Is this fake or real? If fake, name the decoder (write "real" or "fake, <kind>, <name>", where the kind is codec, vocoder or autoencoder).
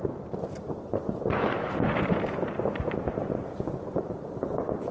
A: fake, vocoder, BigVGAN v2